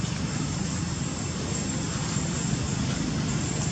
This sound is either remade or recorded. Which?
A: recorded